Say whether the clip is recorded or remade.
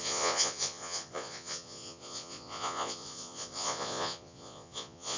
remade